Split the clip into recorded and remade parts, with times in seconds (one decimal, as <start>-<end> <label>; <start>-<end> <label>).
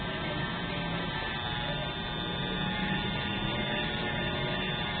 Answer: 0.0-5.0 recorded